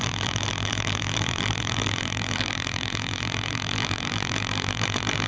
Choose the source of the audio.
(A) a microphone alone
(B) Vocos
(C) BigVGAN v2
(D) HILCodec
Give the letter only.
C